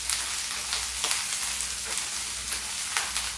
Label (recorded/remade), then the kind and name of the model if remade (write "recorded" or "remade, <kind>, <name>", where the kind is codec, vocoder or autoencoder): recorded